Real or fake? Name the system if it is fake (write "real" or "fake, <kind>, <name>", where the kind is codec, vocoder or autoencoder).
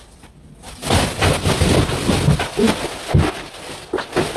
real